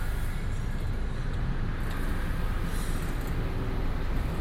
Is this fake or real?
real